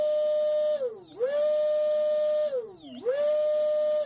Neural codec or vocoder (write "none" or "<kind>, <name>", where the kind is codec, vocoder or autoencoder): none